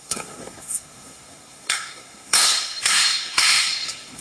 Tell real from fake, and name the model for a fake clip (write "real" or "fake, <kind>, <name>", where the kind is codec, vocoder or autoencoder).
fake, codec, SNAC